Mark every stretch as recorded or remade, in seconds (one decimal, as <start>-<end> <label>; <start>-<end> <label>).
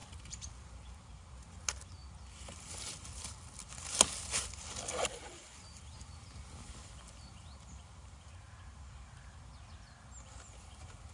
0.0-1.1 remade; 1.1-11.1 recorded